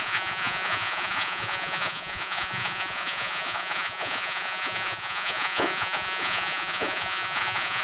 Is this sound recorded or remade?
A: remade